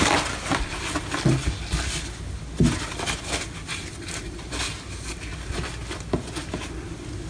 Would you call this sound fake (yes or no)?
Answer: no